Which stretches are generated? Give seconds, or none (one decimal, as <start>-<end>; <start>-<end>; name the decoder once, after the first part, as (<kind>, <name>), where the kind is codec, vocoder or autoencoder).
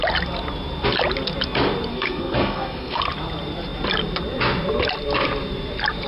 1.9-3.0 (codec, SNAC)